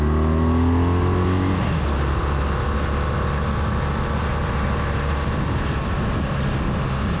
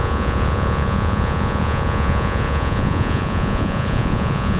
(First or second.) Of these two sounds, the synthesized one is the second